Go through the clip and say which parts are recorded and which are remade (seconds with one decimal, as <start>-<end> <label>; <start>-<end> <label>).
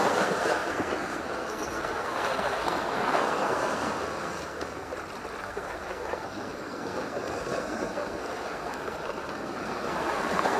0.0-4.9 remade; 4.9-5.4 recorded; 5.4-10.6 remade